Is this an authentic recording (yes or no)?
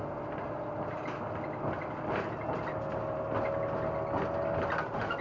yes